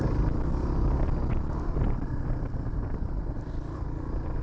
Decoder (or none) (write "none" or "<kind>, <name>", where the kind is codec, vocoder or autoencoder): none